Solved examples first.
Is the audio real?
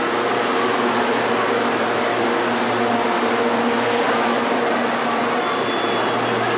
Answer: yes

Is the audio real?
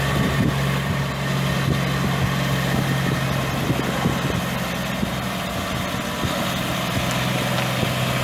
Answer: yes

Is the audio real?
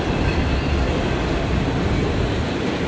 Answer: yes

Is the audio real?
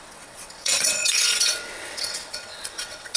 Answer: no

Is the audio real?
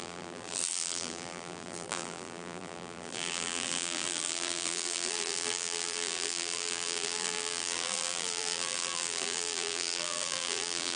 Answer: no